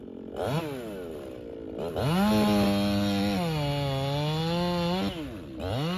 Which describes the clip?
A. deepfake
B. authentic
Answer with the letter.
B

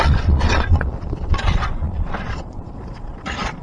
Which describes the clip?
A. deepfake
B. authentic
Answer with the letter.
A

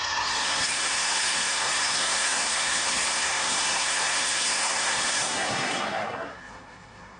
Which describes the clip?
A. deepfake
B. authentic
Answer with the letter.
A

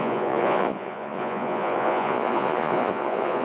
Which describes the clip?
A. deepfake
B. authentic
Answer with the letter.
A